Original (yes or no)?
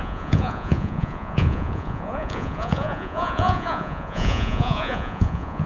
no